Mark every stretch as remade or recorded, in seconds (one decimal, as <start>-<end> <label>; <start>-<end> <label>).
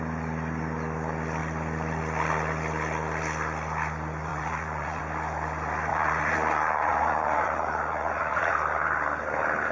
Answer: 0.0-4.3 recorded; 4.3-5.0 remade; 5.0-5.9 recorded; 5.9-8.5 remade; 8.5-9.7 recorded